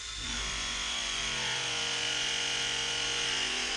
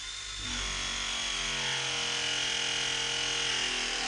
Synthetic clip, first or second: first